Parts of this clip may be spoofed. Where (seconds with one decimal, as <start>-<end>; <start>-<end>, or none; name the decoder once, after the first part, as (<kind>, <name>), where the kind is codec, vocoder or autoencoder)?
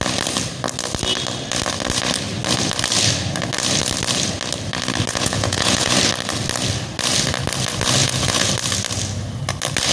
5.1-5.9 (vocoder, Vocos); 8.0-8.5